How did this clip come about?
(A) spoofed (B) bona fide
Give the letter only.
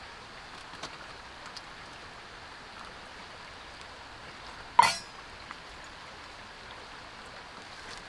B